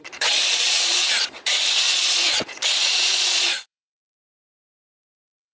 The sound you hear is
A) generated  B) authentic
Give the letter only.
A